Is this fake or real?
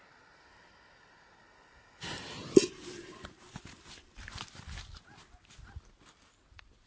real